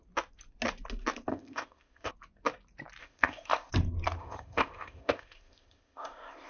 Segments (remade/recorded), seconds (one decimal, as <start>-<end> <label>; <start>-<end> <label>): 0.0-1.3 recorded; 1.3-2.1 remade; 2.1-3.0 recorded; 3.0-3.7 remade; 3.7-4.2 recorded; 4.2-6.5 remade